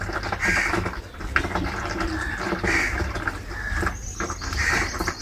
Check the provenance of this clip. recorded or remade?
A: remade